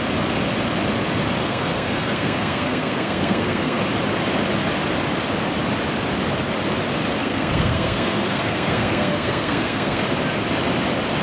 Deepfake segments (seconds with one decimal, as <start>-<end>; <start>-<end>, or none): 1.4-3.8; 7.2-10.0